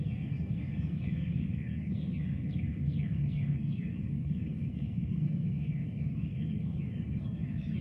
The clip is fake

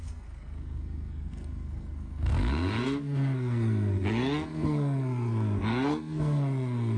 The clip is fake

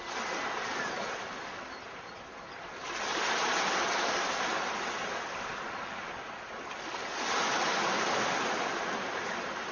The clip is real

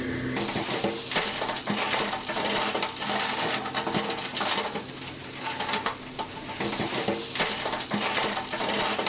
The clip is real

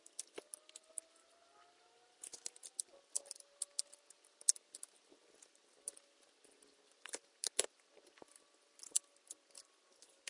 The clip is real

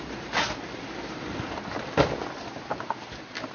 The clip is real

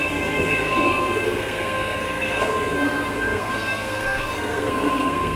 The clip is fake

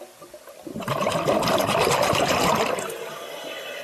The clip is real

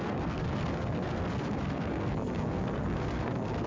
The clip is fake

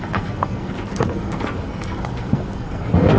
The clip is fake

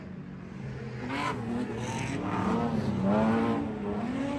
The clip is real